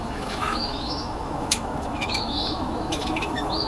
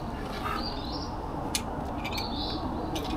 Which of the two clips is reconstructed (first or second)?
first